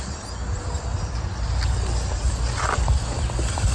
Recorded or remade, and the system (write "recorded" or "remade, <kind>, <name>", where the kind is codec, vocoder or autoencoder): recorded